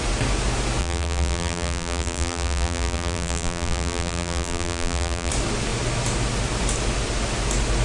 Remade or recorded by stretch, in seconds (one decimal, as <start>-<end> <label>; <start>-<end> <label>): 0.0-0.8 recorded; 0.8-5.3 remade; 5.3-7.8 recorded